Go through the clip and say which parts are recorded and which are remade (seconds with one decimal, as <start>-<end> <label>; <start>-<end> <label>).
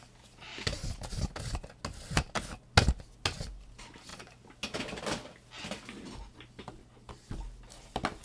0.0-0.5 recorded; 0.5-1.3 remade; 1.3-8.2 recorded